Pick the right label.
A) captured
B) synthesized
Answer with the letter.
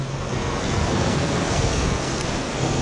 B